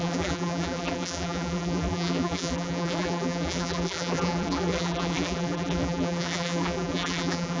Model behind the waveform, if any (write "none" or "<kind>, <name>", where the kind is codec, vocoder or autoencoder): vocoder, BigVGAN v2